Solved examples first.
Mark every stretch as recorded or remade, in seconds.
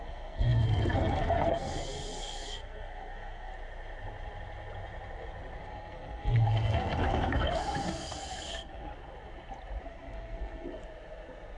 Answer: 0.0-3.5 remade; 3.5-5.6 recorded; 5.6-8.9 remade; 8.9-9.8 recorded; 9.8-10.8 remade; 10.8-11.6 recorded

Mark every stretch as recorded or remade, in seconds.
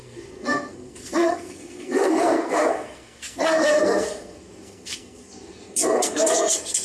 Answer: 0.0-6.8 remade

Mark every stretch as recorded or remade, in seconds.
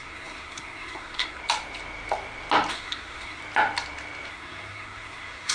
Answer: 0.0-1.4 remade; 1.4-2.7 recorded; 2.7-3.4 remade; 3.4-4.3 recorded; 4.3-5.5 remade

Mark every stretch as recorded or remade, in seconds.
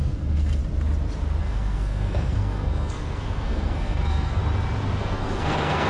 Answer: 0.0-0.6 remade; 0.6-1.4 recorded; 1.4-4.4 remade; 4.4-5.0 recorded; 5.0-5.9 remade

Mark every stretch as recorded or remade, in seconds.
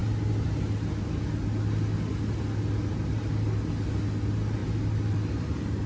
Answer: 0.0-5.9 recorded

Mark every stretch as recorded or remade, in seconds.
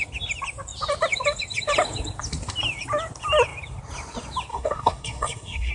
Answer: 0.0-4.5 recorded; 4.5-5.7 remade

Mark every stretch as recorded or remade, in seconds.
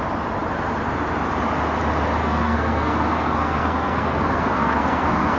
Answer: 0.0-2.2 recorded; 2.2-5.4 remade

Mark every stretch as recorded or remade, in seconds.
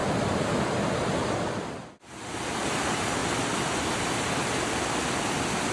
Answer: 0.0-5.7 recorded